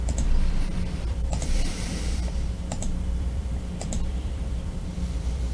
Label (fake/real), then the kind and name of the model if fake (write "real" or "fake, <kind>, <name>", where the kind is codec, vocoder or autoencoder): fake, vocoder, BigVGAN v2